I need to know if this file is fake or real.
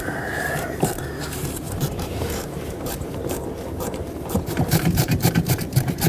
fake